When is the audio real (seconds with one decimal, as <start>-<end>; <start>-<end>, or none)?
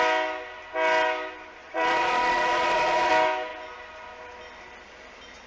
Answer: 0.0-1.6; 3.1-5.5